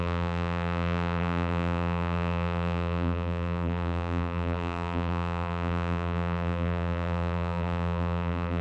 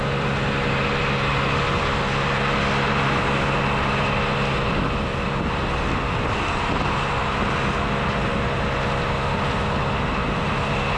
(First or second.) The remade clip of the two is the first